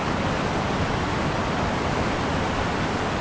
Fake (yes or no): no